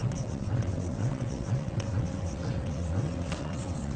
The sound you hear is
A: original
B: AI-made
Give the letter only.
B